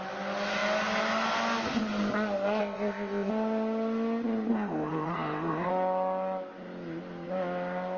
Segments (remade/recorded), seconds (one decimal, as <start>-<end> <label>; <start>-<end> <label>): 0.0-2.6 recorded; 2.6-3.3 remade; 3.3-4.5 recorded; 4.5-5.7 remade; 5.7-8.0 recorded